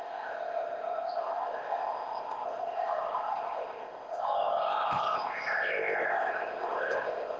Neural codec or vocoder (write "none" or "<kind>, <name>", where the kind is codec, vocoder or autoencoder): codec, ZipCodec